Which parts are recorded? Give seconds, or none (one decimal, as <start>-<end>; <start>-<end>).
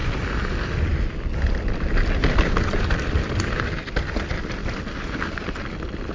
0.0-6.1